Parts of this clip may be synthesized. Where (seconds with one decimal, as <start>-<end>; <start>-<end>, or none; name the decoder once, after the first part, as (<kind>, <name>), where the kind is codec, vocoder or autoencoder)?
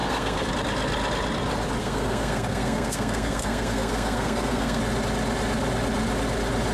0.0-0.5 (codec, SNAC); 1.8-4.8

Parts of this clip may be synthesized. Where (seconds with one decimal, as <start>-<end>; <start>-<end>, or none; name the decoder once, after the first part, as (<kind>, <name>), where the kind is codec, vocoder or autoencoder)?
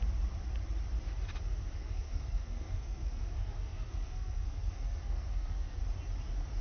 1.8-5.8 (codec, SNAC)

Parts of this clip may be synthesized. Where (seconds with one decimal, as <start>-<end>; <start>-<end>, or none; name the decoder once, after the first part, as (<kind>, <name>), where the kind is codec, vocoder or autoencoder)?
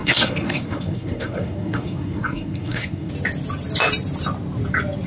0.0-3.1 (codec, SNAC)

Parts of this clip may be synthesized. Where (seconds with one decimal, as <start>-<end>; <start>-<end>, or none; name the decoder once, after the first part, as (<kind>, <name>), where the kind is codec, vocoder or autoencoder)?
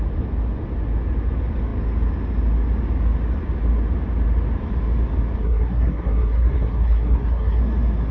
5.4-7.6 (codec, SNAC)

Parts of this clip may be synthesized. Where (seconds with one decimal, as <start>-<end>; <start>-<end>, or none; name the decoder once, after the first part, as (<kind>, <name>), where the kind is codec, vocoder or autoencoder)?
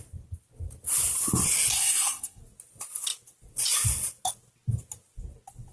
1.7-2.4 (codec, SNAC)